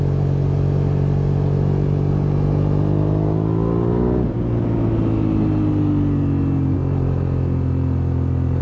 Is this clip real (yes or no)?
yes